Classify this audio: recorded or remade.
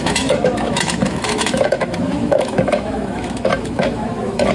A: remade